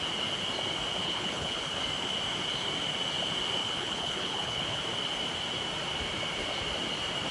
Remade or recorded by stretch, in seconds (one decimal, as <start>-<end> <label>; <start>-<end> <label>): 0.0-1.0 recorded; 1.0-1.8 remade; 1.8-3.6 recorded; 3.6-4.8 remade; 4.8-7.3 recorded